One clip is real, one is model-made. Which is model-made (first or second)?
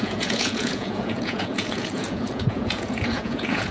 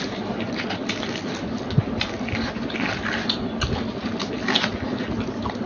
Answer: first